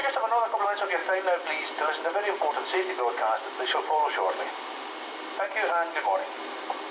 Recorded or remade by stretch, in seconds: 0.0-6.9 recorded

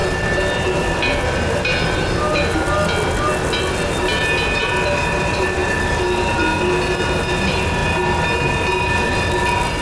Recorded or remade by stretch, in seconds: 0.0-9.8 recorded

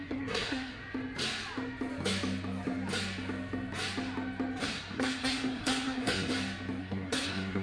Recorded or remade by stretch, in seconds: 0.0-0.8 remade; 0.8-4.6 recorded; 4.6-6.3 remade; 6.3-6.8 recorded; 6.8-7.6 remade